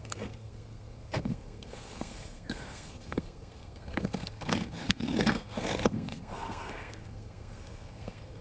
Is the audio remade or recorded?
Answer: remade